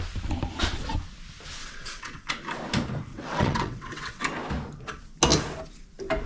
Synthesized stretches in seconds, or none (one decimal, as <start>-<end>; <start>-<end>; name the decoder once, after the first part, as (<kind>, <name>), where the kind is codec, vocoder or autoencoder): 1.6-2.3 (vocoder, WaveNeXt); 3.1-4.2